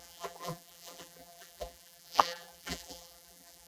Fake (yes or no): yes